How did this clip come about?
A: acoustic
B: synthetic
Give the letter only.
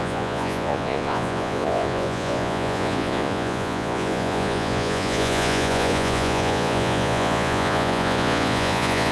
B